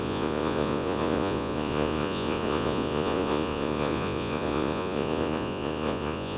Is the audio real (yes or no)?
no